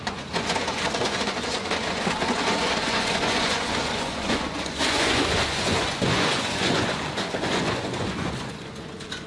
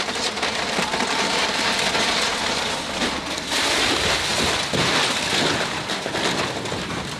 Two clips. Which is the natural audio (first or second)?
second